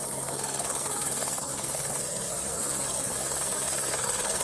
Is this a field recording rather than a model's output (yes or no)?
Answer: no